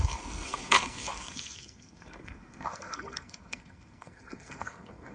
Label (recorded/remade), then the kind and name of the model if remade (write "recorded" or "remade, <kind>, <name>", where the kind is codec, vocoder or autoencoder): remade, codec, SNAC